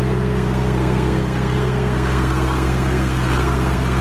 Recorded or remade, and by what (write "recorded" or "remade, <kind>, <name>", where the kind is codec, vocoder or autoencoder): remade, codec, SNAC